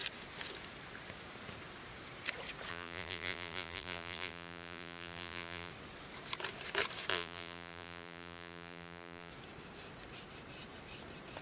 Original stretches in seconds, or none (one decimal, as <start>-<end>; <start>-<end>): 0.0-2.7; 5.7-7.1; 9.3-11.4